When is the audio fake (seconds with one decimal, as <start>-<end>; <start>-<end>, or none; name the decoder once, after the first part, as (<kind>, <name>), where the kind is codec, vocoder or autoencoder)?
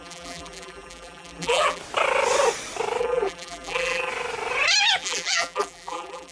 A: 0.0-1.8 (vocoder, BigVGAN v2); 3.0-4.1; 5.0-6.3